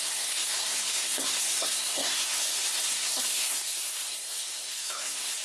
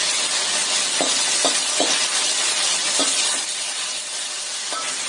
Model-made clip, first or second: first